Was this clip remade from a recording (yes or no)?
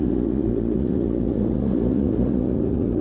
yes